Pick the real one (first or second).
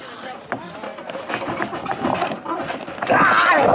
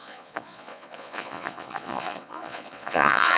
first